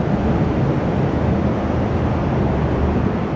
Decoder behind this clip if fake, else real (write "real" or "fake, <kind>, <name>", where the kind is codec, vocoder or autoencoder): real